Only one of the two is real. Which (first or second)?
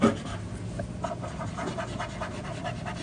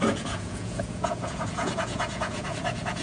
first